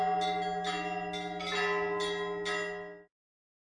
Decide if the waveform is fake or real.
real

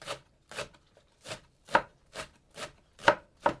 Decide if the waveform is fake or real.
fake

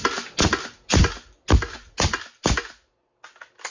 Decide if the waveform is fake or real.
real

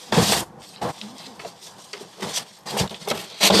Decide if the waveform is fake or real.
real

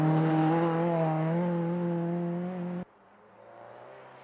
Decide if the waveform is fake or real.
real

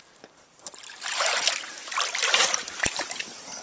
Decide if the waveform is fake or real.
fake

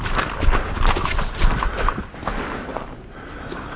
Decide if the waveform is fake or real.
fake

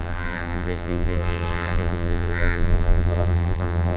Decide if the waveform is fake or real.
fake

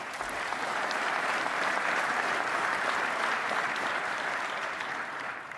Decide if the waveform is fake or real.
fake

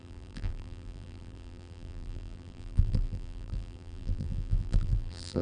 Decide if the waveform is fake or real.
fake